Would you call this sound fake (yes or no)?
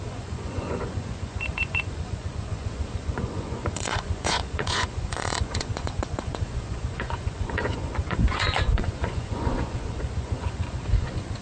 yes